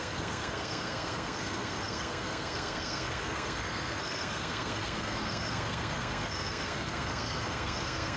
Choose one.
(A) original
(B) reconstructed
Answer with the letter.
B